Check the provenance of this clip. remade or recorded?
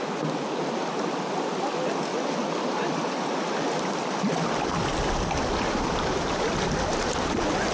recorded